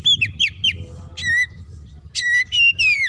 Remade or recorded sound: recorded